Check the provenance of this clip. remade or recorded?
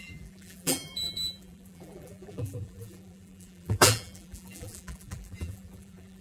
remade